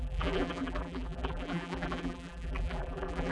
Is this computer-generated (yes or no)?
yes